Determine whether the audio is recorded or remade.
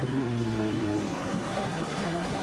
remade